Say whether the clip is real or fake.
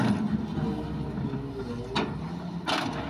real